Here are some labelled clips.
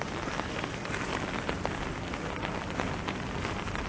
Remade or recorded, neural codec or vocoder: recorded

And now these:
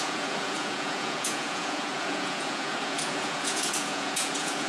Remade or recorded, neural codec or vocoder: remade, vocoder, Vocos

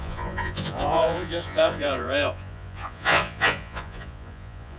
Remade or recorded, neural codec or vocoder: remade, vocoder, Vocos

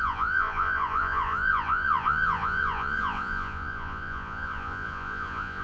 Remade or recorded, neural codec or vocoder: remade, vocoder, Vocos